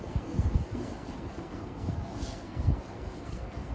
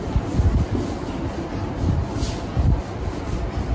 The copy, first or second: first